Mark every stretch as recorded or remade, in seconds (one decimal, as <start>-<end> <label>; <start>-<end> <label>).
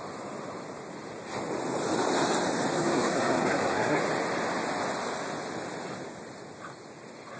0.0-2.7 recorded; 2.7-4.0 remade; 4.0-7.4 recorded